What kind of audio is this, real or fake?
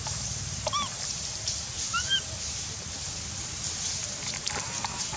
real